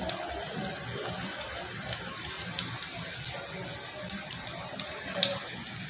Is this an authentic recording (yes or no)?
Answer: yes